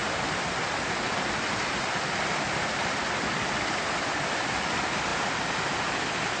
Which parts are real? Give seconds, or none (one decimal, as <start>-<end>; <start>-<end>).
0.0-6.4